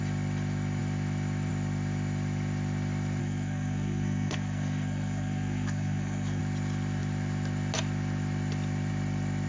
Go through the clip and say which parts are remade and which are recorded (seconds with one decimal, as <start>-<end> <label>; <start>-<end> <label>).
0.0-3.2 recorded; 3.2-6.4 remade; 6.4-9.5 recorded